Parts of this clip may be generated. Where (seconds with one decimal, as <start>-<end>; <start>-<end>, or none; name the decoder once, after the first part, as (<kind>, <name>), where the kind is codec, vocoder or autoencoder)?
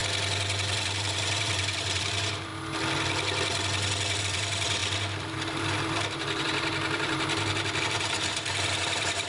0.8-2.5 (vocoder, BigVGAN v2); 4.2-9.3